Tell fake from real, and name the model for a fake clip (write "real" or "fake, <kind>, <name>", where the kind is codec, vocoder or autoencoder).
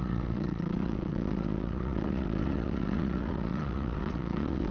fake, vocoder, WaveNeXt